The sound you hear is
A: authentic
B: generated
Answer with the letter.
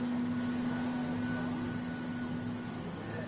A